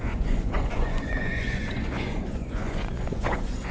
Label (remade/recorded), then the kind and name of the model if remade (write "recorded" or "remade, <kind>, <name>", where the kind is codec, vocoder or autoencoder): remade, vocoder, Vocos